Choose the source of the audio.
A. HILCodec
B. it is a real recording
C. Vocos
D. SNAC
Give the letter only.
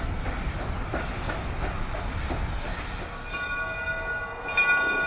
B